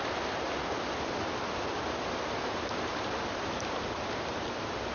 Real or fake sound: real